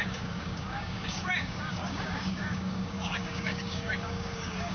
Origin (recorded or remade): remade